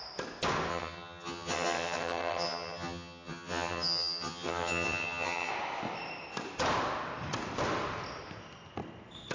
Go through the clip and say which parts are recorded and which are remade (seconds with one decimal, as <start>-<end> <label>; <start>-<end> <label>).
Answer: 0.0-0.7 recorded; 0.7-5.5 remade; 5.5-9.3 recorded